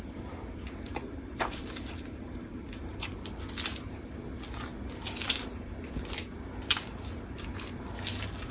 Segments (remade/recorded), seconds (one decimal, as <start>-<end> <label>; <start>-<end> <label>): 0.0-0.9 recorded; 0.9-3.2 remade; 3.2-8.5 recorded